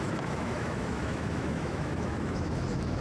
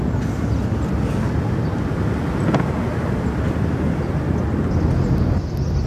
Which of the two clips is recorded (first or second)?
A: second